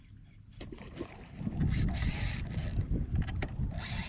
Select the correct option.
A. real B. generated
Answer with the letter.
A